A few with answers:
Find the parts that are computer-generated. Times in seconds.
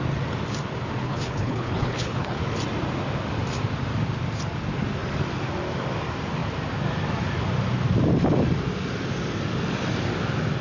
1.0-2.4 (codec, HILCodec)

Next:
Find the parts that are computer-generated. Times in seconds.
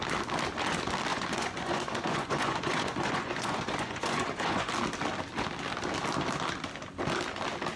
1.1-4.7 (vocoder, Vocos)